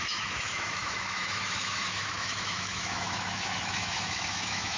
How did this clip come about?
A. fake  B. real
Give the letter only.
A